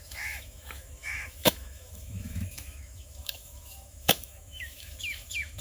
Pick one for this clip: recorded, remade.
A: remade